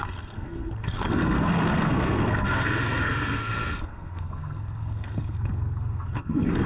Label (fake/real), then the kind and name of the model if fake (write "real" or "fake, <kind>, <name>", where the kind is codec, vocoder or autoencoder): fake, codec, SNAC